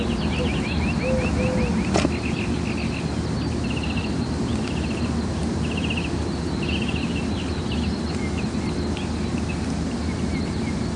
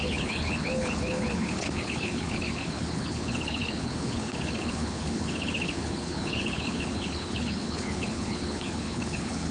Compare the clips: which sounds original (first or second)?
first